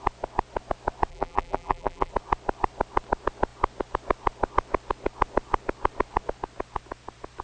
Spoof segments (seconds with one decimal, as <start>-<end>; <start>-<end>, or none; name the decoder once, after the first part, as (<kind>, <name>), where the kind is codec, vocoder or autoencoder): 1.1-2.1 (vocoder, BigVGAN v2)